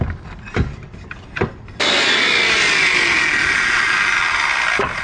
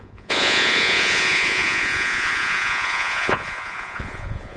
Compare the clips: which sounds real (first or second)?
first